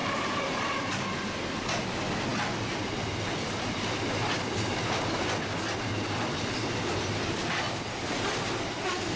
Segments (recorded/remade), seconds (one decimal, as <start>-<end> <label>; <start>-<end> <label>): 0.0-1.3 remade; 1.3-9.2 recorded